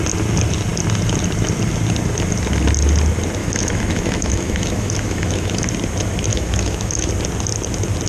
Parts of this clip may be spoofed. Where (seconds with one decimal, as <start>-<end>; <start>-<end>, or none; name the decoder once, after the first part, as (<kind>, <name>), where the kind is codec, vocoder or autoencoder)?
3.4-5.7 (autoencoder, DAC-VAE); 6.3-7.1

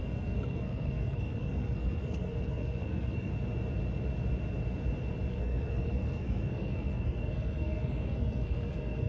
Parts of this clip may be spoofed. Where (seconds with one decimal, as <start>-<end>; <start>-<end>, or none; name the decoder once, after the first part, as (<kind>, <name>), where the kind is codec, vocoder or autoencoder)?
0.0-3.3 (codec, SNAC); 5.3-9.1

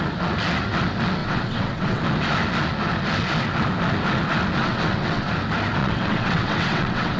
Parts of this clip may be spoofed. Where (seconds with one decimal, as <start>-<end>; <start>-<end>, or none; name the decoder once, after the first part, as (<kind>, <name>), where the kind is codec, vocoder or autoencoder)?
1.2-2.0 (vocoder, WaveNeXt); 4.6-5.3; 5.8-7.2

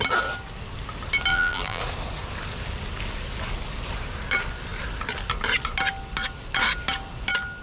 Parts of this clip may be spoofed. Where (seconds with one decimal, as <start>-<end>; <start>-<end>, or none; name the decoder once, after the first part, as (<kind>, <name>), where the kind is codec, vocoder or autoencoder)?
1.3-1.8 (vocoder, BigVGAN v2)

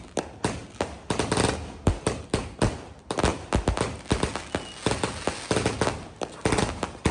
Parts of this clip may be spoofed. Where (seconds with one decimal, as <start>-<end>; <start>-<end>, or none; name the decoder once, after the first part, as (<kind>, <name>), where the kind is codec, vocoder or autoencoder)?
none

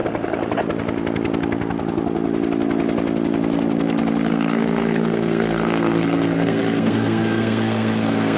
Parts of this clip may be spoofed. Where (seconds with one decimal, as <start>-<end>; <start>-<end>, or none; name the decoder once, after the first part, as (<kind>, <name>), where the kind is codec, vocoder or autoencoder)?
4.3-8.4 (codec, SNAC)